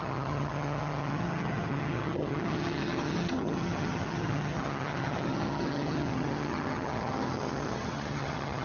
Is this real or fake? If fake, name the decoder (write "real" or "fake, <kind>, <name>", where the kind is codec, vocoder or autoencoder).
fake, vocoder, HiFi-GAN